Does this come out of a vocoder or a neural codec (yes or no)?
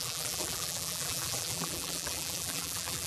yes